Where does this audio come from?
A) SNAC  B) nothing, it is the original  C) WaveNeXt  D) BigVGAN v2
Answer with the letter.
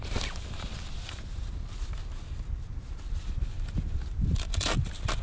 B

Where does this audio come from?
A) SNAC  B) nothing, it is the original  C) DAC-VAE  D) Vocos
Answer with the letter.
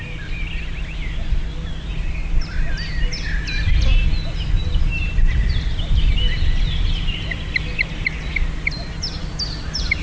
B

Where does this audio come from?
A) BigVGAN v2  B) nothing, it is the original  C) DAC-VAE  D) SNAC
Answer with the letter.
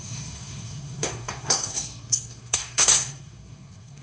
D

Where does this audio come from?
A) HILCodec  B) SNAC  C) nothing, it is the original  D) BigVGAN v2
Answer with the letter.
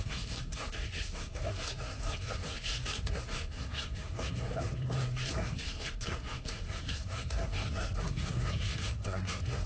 B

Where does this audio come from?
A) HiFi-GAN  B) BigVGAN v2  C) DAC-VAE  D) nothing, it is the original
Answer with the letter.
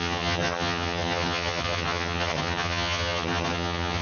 A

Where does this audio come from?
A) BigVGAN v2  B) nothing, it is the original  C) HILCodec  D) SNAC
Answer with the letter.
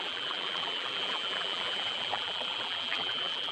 A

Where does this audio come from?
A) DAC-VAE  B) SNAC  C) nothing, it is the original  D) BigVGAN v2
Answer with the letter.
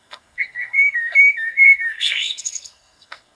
B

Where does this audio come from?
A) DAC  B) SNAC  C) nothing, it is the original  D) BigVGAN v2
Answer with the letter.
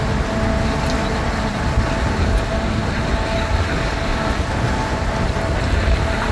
C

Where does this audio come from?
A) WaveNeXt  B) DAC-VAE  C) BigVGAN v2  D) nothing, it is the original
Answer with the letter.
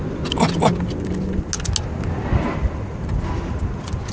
D